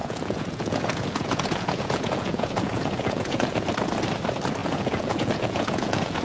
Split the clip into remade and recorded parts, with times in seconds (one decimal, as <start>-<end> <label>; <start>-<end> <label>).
0.0-3.7 remade; 3.7-4.6 recorded; 4.6-6.2 remade